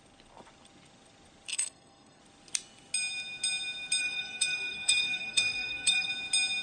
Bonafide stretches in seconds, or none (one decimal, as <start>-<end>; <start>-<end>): 0.0-1.5; 2.2-4.0; 6.1-6.6